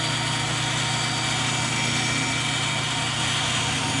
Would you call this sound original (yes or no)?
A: yes